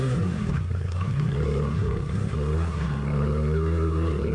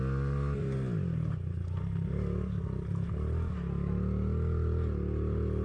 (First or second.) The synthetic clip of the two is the first